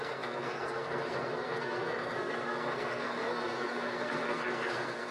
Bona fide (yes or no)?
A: no